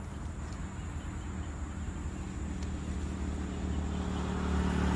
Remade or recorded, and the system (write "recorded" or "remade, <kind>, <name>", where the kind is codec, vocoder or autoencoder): recorded